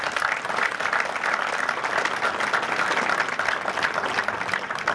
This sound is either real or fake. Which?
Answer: real